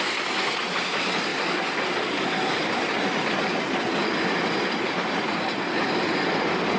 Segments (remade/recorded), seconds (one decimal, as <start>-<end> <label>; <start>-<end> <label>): 0.0-6.8 recorded